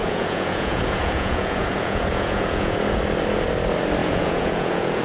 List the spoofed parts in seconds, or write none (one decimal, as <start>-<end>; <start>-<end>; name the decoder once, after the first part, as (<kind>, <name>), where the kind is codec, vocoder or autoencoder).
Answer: 0.0-3.0 (vocoder, Vocos); 4.0-5.0